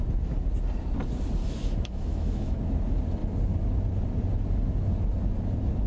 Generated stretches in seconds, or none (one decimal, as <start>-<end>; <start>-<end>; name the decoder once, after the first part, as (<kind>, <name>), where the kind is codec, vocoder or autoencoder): 1.4-2.6 (autoencoder, DAC-VAE)